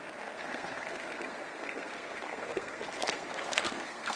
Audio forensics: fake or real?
fake